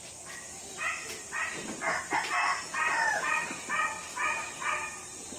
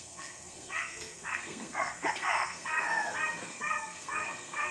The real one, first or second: first